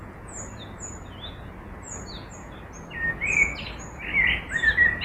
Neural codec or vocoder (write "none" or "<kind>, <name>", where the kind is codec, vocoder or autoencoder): none